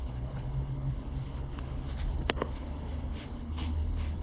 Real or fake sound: fake